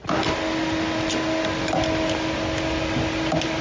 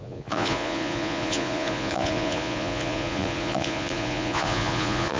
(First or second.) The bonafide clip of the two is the first